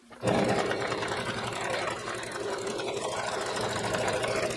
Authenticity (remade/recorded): remade